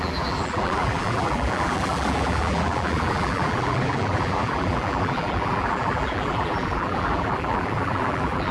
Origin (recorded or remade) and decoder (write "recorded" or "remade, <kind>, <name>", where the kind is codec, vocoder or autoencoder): remade, vocoder, BigVGAN v2